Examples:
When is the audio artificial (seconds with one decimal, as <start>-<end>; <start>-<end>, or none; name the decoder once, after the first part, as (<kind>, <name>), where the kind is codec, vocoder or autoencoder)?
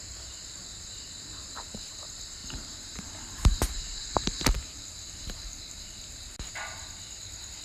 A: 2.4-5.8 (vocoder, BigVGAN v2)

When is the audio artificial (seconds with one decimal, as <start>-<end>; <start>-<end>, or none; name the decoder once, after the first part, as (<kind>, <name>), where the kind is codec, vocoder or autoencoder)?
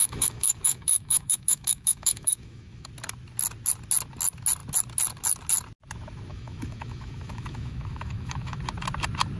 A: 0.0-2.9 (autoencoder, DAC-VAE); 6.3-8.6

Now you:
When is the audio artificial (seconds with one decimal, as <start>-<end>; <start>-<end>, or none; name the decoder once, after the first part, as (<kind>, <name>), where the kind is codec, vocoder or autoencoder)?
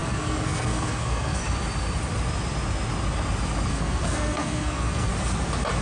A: 0.0-1.4 (codec, SNAC); 3.7-5.1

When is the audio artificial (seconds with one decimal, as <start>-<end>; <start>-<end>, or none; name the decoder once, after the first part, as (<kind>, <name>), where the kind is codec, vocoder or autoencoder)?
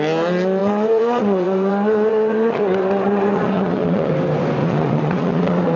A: 0.6-4.1 (vocoder, Vocos); 4.6-5.8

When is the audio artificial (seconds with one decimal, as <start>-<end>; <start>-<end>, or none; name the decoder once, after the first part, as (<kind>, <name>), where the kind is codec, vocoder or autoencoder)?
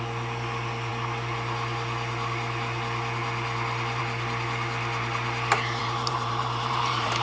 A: 5.8-7.2 (vocoder, BigVGAN v2)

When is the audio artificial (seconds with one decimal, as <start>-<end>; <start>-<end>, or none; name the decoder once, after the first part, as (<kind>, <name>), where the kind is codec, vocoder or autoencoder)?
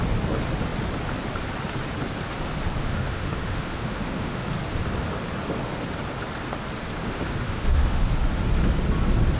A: 2.8-4.4 (autoencoder, DAC-VAE); 7.0-8.1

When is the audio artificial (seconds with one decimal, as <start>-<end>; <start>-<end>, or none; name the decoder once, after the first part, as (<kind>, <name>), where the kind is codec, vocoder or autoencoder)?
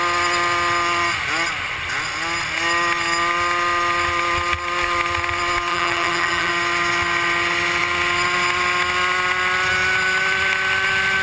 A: 5.7-6.5 (vocoder, HiFi-GAN)